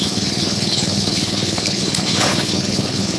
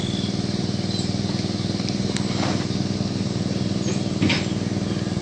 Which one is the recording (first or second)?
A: second